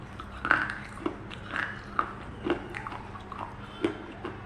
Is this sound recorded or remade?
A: recorded